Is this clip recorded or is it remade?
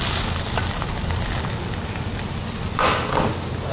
recorded